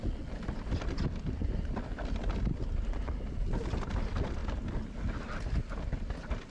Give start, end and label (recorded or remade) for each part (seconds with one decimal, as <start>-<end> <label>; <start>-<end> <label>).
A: 0.0-3.9 recorded; 3.9-4.4 remade; 4.4-5.6 recorded; 5.6-6.5 remade